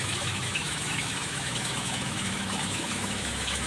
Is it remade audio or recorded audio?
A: remade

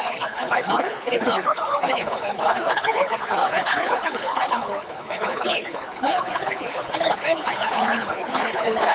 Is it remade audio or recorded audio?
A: remade